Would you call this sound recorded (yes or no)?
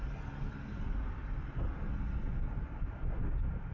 yes